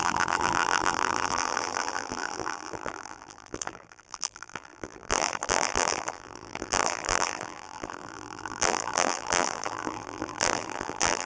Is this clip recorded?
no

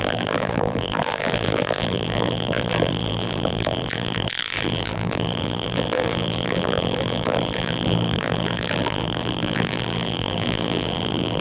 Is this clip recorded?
no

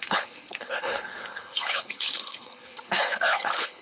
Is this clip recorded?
no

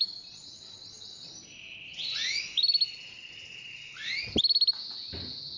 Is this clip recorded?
yes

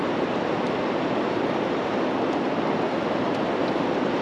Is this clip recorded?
yes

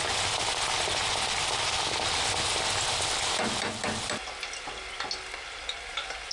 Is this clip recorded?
yes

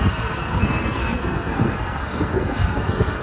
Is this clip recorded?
no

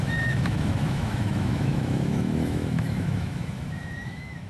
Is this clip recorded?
no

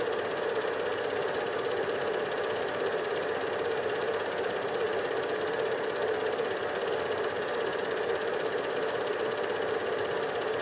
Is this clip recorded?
yes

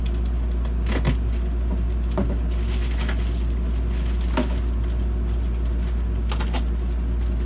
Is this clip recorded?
yes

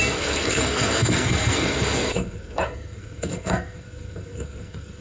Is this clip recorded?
no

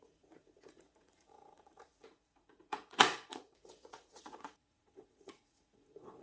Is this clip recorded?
no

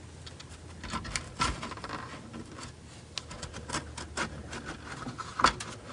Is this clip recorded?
yes